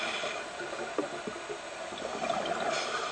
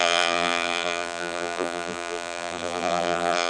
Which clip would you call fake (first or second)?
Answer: second